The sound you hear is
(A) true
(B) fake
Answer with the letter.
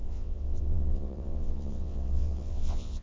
B